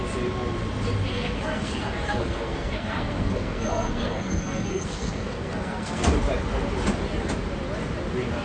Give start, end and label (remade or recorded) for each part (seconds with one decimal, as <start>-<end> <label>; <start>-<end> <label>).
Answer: 0.0-1.1 recorded; 1.1-6.1 remade; 6.1-8.4 recorded